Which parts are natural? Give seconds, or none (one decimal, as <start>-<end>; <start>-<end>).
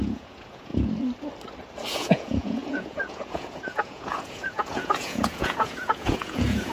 0.7-1.9